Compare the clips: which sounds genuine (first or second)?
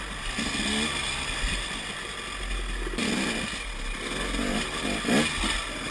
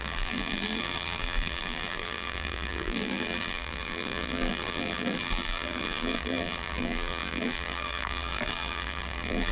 first